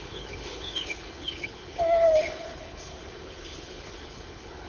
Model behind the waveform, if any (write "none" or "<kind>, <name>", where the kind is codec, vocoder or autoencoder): codec, HILCodec